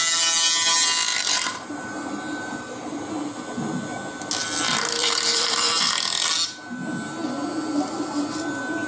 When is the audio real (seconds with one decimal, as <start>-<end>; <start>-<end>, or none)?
0.0-1.1; 3.1-5.0; 5.9-8.9